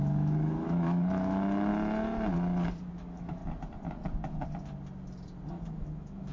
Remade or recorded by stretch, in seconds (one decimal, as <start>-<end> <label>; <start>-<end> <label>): 0.0-1.7 remade; 1.7-3.0 recorded; 3.0-3.4 remade; 3.4-5.5 recorded; 5.5-6.3 remade